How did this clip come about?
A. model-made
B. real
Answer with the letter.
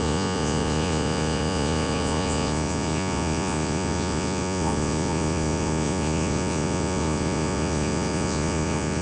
A